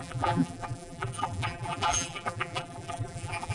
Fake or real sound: fake